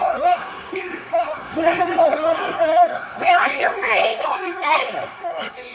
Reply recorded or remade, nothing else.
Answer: remade